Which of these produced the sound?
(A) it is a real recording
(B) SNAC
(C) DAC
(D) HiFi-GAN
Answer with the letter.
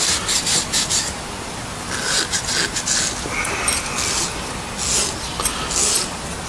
A